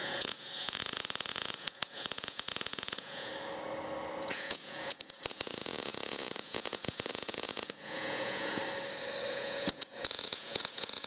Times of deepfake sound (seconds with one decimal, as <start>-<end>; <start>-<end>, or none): 0.0-3.3; 4.3-8.6; 9.3-11.1